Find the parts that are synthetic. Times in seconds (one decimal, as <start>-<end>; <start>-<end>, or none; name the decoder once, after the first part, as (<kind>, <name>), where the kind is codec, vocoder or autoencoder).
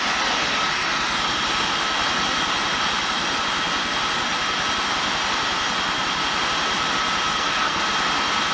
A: 7.3-7.8 (codec, SNAC)